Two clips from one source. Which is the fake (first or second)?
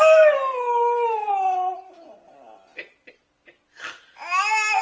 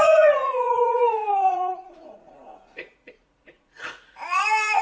second